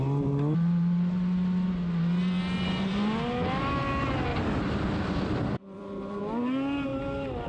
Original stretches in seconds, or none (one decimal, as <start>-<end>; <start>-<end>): 0.0-4.3; 6.2-7.5